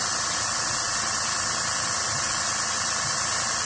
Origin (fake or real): real